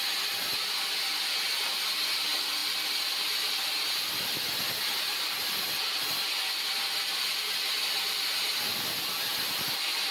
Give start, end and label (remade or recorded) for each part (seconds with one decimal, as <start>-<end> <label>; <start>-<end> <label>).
0.0-10.1 recorded